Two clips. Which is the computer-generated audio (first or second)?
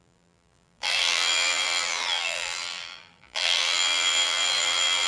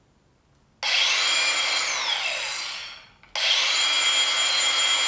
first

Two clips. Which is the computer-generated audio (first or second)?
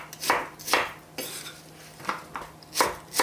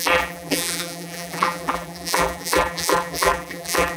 second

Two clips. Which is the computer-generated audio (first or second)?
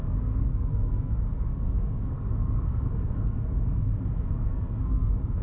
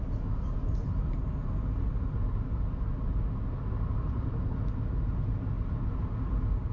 first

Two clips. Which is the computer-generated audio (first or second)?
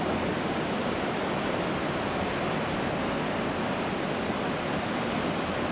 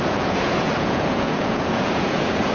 second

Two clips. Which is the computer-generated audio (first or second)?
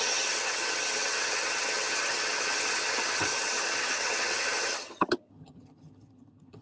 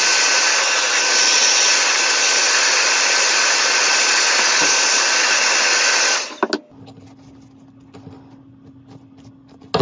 first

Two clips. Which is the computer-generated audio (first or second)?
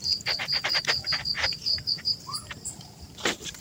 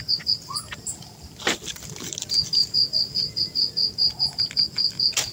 first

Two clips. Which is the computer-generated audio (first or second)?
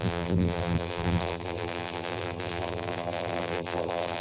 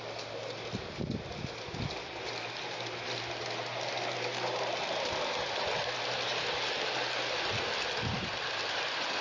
first